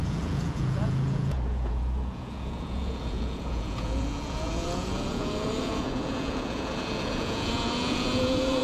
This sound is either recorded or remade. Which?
remade